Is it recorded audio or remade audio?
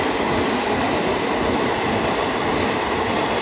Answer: recorded